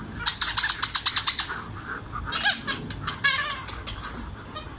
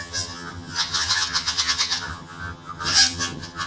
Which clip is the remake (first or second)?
second